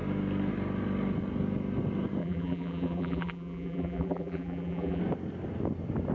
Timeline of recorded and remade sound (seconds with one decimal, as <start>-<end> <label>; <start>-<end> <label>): 0.0-2.2 recorded; 2.2-5.0 remade; 5.0-6.1 recorded